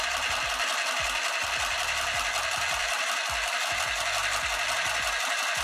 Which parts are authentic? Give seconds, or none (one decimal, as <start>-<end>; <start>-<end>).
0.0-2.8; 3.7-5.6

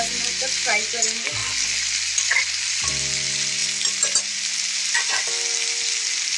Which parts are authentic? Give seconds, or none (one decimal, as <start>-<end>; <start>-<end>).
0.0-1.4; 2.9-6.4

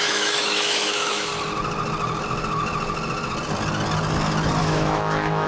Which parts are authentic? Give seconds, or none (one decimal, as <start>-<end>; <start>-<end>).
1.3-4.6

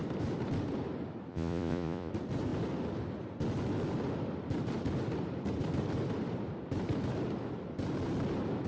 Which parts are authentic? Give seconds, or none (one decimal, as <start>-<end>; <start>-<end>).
0.0-1.3; 2.1-8.7

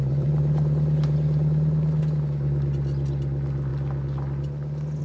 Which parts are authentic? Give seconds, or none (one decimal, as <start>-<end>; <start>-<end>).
2.0-5.0

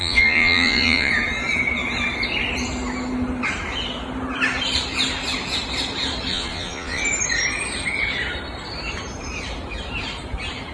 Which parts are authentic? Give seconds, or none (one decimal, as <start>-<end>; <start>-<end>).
1.1-6.3; 7.0-10.7

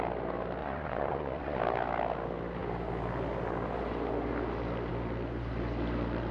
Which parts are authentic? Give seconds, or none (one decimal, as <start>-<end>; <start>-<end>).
0.0-0.6; 1.6-6.3

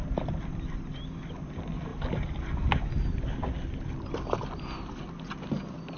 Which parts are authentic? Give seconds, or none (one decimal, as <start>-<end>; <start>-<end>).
0.0-6.0